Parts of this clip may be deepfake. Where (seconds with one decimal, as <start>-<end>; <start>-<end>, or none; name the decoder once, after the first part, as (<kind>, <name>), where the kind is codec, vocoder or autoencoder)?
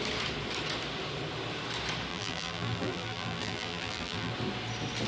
2.1-4.3 (vocoder, BigVGAN v2)